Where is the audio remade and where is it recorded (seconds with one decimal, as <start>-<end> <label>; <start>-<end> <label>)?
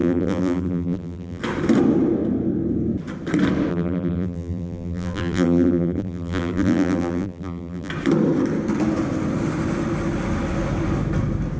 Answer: 0.0-1.4 remade; 1.4-3.7 recorded; 3.7-7.9 remade; 7.9-11.6 recorded